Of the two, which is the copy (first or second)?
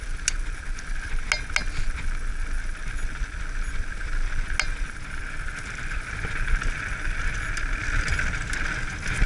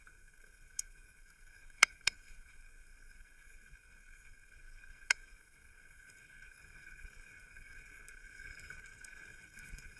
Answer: second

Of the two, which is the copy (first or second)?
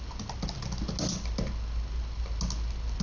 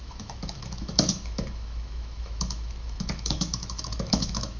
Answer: second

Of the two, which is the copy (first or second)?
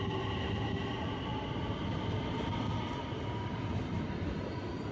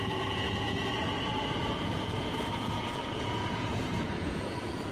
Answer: second